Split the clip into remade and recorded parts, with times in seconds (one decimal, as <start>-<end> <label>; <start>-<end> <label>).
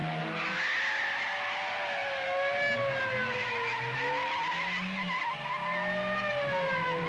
0.0-7.1 recorded